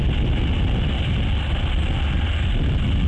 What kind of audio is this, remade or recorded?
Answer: recorded